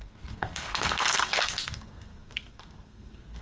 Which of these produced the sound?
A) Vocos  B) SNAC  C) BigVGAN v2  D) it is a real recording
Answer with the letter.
B